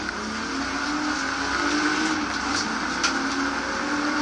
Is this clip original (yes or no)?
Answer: yes